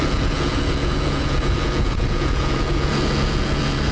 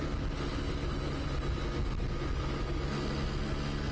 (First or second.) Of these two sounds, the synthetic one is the first